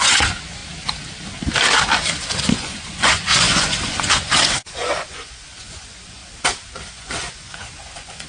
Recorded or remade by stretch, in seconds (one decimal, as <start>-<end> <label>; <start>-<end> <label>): 0.0-0.6 remade; 0.6-2.4 recorded; 2.4-6.2 remade; 6.2-6.9 recorded; 6.9-8.3 remade